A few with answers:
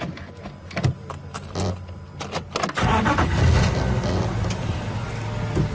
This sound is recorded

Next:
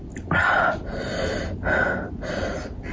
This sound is recorded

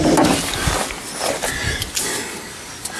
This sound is recorded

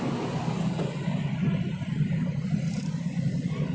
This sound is recorded